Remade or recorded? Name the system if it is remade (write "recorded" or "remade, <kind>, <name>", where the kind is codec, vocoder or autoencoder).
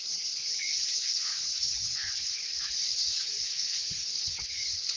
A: remade, codec, HILCodec